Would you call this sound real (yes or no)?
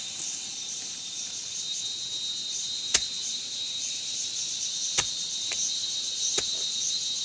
no